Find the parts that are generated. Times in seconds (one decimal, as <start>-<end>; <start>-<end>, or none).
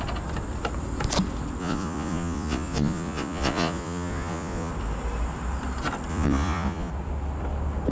1.6-4.7; 6.1-6.9